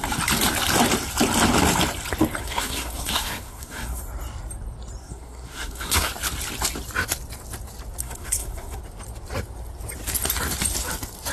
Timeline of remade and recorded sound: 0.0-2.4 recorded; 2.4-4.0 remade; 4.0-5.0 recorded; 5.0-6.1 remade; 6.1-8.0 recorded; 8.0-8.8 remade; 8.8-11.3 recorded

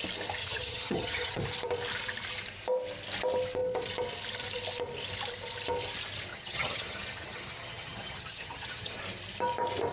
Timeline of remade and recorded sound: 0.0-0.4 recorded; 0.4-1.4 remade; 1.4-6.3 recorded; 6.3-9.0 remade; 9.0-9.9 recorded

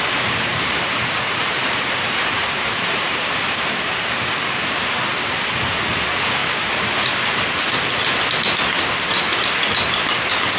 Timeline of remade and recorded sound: 0.0-0.5 recorded; 0.5-5.4 remade; 5.4-6.4 recorded; 6.4-7.4 remade; 7.4-10.6 recorded